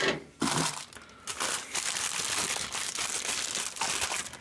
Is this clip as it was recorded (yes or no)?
yes